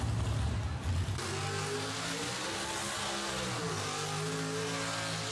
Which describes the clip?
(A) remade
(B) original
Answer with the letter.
B